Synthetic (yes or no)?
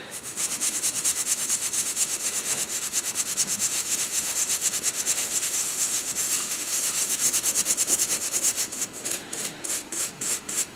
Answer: yes